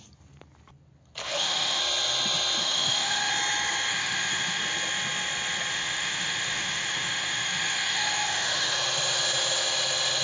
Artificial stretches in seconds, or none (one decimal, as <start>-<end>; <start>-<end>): 1.2-1.8; 2.6-3.3; 3.9-4.6; 5.7-8.7